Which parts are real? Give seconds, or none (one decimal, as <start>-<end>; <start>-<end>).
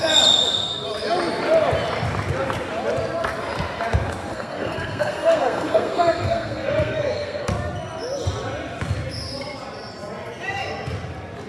0.0-4.3; 7.5-11.5